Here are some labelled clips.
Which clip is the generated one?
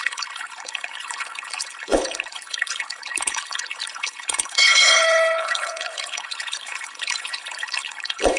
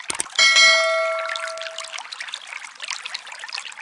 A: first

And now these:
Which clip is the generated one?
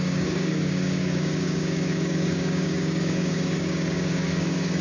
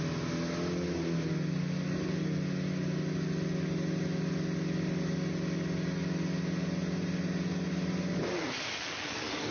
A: first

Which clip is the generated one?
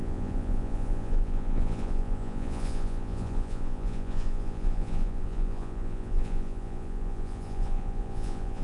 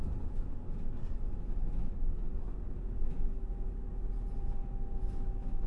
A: first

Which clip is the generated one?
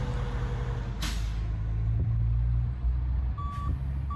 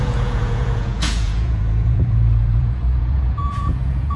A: second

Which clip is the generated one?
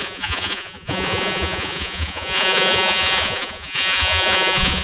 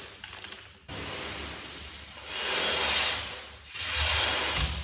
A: first